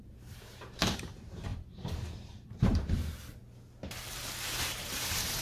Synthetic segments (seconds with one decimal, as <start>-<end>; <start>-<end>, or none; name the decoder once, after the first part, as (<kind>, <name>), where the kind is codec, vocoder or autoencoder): 0.0-3.4 (vocoder, BigVGAN v2); 4.2-5.4